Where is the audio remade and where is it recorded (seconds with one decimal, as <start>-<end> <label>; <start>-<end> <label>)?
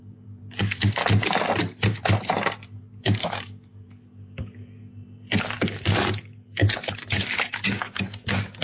0.0-1.0 remade; 1.0-2.8 recorded; 2.8-4.8 remade; 4.8-5.4 recorded; 5.4-8.6 remade